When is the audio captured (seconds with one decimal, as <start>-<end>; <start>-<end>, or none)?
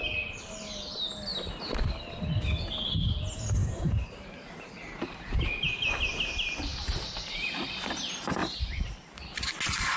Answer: 0.0-3.6; 5.5-8.4; 9.2-10.0